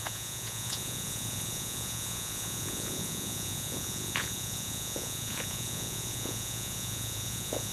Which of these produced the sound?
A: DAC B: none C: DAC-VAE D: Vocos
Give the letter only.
D